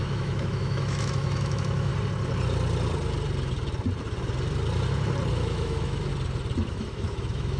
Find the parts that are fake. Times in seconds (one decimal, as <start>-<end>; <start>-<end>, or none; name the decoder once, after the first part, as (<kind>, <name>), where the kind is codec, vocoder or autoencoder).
0.0-1.9 (autoencoder, DAC-VAE); 5.3-6.1; 6.7-7.6